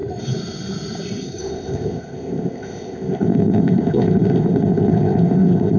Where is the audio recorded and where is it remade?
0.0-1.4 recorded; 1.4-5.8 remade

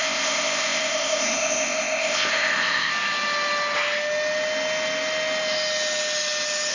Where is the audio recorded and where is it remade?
0.0-2.9 remade; 2.9-6.7 recorded

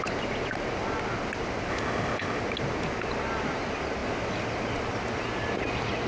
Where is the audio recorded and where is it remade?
0.0-1.7 recorded; 1.7-2.4 remade; 2.4-6.1 recorded

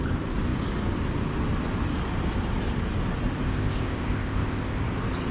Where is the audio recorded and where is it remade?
0.0-3.5 recorded; 3.5-4.8 remade; 4.8-5.3 recorded

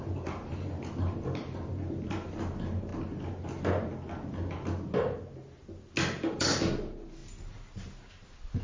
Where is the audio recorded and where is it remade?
0.0-8.6 recorded

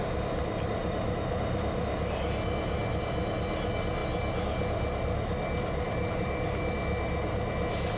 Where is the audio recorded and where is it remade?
0.0-8.0 recorded

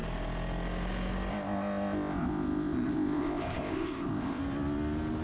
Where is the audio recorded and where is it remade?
0.0-1.3 recorded; 1.3-4.4 remade; 4.4-5.2 recorded

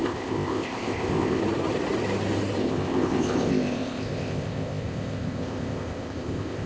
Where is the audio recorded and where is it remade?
0.0-1.4 remade; 1.4-2.6 recorded; 2.6-6.7 remade